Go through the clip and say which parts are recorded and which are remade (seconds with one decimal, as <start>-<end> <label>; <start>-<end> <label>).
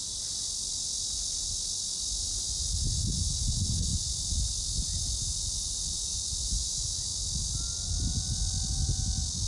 0.0-9.5 recorded